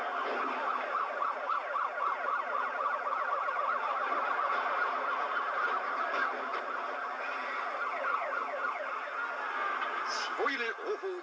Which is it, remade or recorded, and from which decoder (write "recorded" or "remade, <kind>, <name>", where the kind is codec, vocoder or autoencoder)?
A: recorded